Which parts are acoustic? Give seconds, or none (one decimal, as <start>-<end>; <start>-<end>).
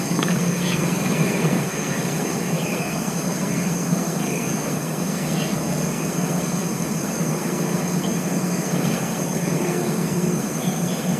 none